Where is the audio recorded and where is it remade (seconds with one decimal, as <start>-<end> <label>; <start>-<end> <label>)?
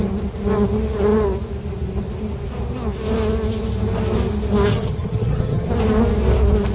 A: 0.0-4.7 recorded; 4.7-5.7 remade; 5.7-6.7 recorded